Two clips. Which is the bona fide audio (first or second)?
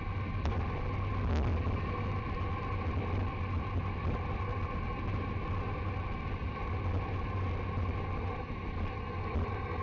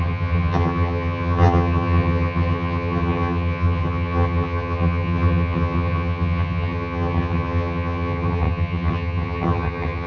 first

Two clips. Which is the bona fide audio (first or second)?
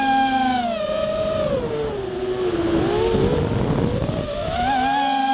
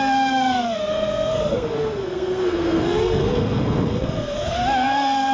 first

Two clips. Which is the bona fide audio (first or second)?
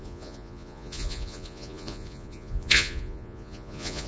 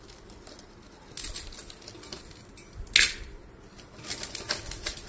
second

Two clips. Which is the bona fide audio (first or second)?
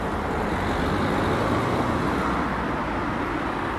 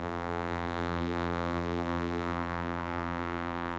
first